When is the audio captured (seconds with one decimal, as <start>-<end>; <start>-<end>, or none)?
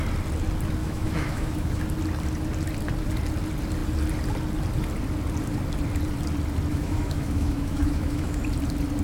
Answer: 0.0-0.8; 1.8-6.7; 8.4-9.0